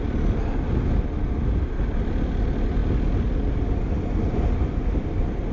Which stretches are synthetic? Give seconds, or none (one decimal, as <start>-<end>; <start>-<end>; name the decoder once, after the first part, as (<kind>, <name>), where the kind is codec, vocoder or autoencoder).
none